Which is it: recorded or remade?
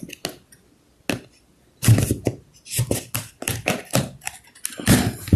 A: recorded